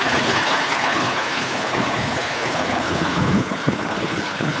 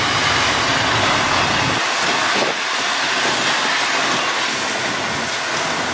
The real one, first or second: second